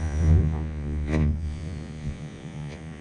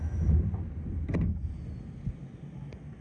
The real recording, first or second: second